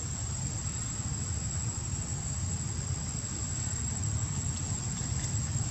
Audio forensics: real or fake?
real